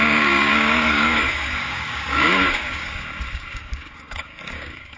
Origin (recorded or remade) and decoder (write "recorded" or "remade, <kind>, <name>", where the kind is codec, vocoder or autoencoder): remade, codec, DAC